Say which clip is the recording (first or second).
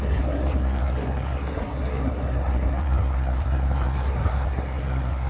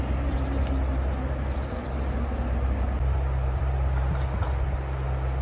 second